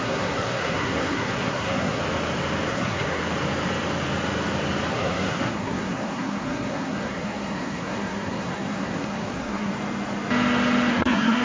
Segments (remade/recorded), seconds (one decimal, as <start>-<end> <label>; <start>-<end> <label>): 0.0-2.0 remade; 2.0-2.7 recorded; 2.7-3.2 remade; 3.2-4.9 recorded; 4.9-9.7 remade; 9.7-10.9 recorded; 10.9-11.4 remade